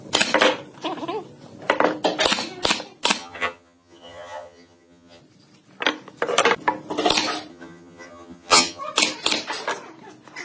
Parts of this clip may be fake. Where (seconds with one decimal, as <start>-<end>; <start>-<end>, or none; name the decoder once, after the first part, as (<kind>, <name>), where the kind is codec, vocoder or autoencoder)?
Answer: 3.2-5.2 (vocoder, HiFi-GAN); 7.5-8.8